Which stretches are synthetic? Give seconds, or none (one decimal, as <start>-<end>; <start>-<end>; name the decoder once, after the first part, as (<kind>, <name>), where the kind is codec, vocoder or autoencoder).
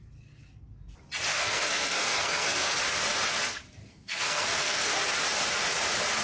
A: 1.3-2.8 (codec, SNAC); 3.8-4.9